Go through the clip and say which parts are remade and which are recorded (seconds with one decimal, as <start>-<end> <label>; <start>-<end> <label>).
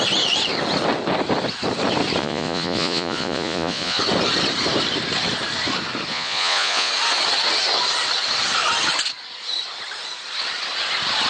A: 0.0-2.2 recorded; 2.2-4.0 remade; 4.0-6.1 recorded; 6.1-6.9 remade; 6.9-11.3 recorded